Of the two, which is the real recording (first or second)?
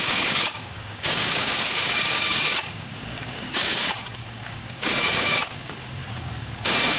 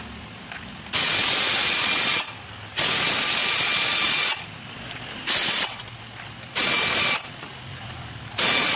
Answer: second